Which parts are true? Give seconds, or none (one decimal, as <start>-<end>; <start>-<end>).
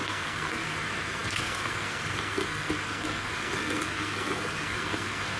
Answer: none